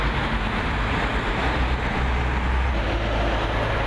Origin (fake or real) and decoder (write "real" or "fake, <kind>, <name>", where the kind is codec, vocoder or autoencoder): real